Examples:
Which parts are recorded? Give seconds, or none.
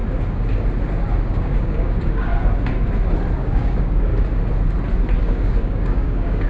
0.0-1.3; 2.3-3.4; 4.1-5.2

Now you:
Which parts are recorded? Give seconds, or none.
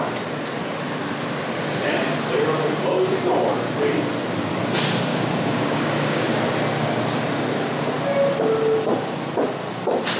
0.0-5.1; 6.2-10.2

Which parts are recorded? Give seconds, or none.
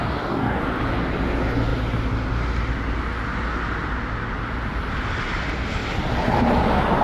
0.6-7.0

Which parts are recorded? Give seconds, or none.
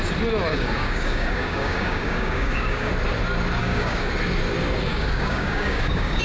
0.0-0.5; 2.9-3.6; 4.1-4.9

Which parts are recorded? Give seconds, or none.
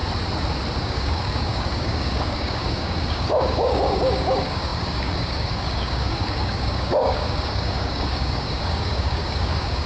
0.0-0.8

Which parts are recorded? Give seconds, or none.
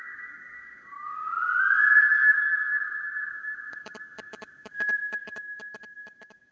1.1-1.9